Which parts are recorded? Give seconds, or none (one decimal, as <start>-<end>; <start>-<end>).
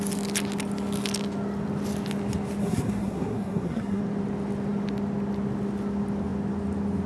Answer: 0.0-2.6; 4.0-7.1